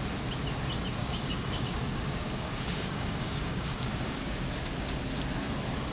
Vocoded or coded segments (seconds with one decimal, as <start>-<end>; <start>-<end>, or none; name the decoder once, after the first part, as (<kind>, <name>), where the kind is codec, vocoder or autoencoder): 1.0-4.5 (codec, DAC)